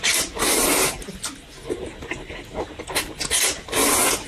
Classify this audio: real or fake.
real